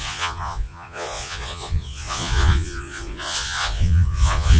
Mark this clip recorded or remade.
remade